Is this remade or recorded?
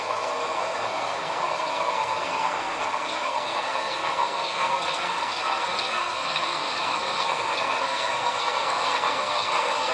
remade